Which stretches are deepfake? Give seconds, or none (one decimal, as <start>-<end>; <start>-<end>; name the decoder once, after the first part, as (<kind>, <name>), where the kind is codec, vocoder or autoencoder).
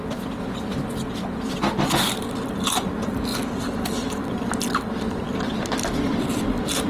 none